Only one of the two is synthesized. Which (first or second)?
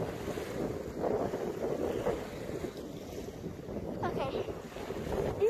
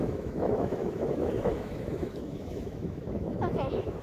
second